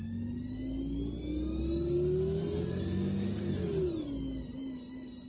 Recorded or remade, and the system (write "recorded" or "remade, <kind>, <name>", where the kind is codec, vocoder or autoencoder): recorded